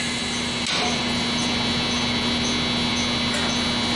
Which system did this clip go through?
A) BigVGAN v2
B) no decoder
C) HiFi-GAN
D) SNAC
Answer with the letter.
B